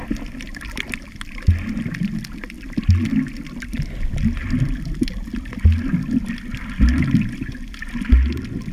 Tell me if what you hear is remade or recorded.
recorded